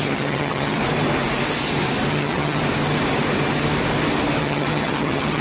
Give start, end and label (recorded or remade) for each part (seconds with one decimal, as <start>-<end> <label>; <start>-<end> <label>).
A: 0.0-0.8 remade; 0.8-2.1 recorded; 2.1-2.6 remade; 2.6-4.4 recorded; 4.4-5.4 remade